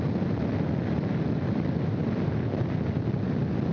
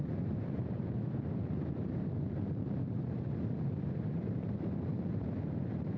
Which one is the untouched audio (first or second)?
first